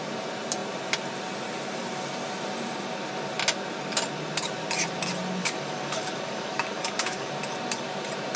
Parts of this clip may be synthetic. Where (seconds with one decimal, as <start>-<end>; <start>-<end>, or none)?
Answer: 5.4-7.3